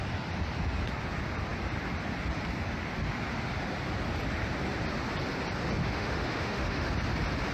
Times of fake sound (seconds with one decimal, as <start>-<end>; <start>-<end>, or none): 5.8-6.9